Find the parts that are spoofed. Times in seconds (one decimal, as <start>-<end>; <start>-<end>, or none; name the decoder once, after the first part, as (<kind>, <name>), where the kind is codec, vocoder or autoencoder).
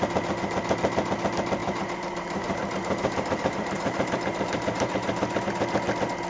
1.6-5.4 (vocoder, BigVGAN v2)